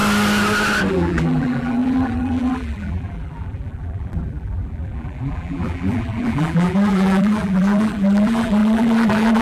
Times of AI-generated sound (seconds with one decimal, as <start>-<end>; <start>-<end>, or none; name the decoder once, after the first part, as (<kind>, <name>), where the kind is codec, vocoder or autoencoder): 0.9-9.4 (vocoder, BigVGAN v2)